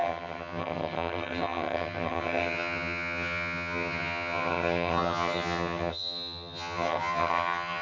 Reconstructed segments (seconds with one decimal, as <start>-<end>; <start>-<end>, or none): 0.0-7.8